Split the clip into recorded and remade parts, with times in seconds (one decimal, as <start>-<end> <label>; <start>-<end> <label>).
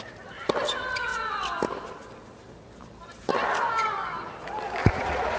0.0-4.8 recorded; 4.8-5.4 remade